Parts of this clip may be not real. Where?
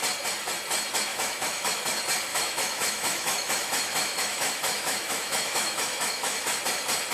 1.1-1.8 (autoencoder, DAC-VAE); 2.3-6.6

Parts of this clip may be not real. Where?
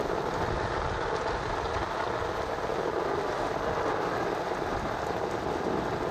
none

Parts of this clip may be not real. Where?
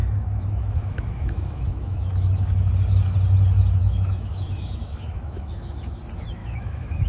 0.0-2.7 (autoencoder, DAC-VAE); 3.8-6.0; 6.4-7.1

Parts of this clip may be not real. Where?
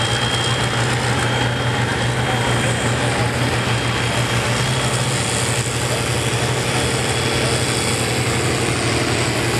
none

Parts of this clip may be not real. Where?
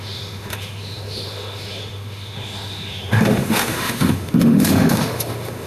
0.0-5.7 (autoencoder, DAC-VAE)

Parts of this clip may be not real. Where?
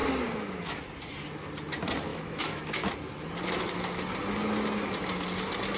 2.1-2.9 (autoencoder, DAC-VAE)